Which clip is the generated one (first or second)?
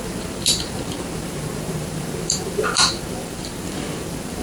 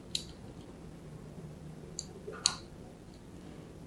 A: first